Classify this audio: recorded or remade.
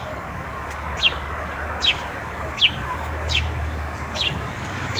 remade